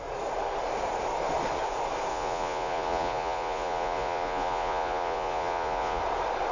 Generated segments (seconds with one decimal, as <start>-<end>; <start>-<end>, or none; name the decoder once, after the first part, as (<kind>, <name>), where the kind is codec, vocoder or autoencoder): 2.1-6.0 (vocoder, Vocos)